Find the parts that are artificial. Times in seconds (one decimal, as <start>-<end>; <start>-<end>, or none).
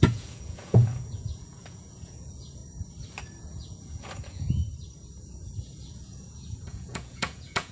0.0-2.6; 3.4-4.6; 5.2-7.7